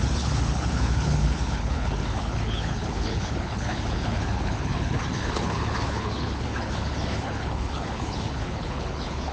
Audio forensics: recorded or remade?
remade